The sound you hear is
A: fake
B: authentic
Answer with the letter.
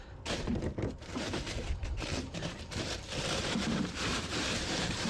A